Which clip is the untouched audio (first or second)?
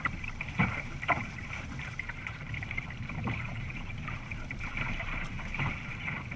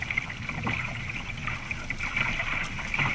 second